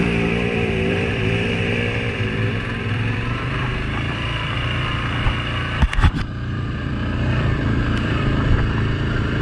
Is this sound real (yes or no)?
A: no